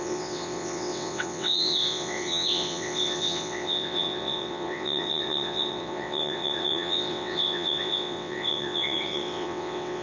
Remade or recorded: remade